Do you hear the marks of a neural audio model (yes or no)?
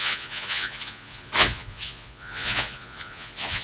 yes